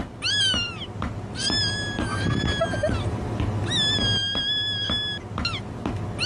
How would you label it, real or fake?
real